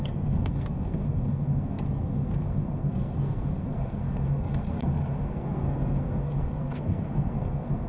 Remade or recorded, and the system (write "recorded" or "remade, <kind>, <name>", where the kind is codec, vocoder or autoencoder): remade, codec, SNAC